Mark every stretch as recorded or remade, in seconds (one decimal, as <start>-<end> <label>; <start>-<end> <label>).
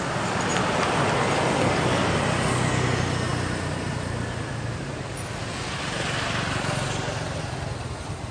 0.0-8.3 recorded